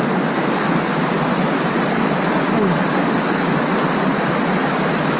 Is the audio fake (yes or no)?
no